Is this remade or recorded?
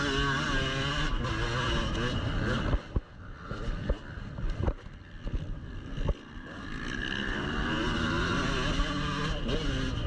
recorded